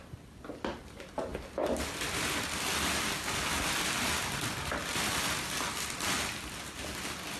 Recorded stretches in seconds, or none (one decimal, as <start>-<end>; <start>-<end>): 0.0-7.4